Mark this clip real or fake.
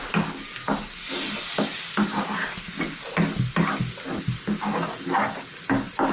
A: real